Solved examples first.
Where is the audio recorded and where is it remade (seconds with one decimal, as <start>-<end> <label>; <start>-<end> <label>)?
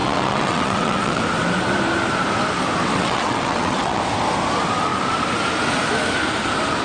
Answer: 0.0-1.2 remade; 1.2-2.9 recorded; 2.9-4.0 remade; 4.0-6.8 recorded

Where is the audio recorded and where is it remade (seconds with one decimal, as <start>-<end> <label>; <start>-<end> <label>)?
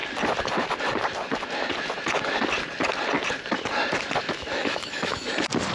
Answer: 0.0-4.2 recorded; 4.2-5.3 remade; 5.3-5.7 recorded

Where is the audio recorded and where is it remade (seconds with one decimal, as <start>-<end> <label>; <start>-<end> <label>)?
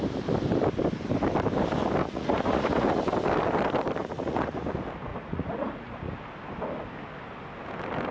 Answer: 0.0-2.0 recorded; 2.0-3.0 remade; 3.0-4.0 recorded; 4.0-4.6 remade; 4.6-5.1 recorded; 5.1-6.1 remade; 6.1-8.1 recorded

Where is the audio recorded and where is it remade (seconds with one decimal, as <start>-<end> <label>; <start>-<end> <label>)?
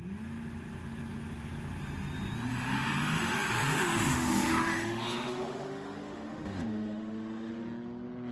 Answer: 0.0-2.5 recorded; 2.5-7.5 remade; 7.5-8.3 recorded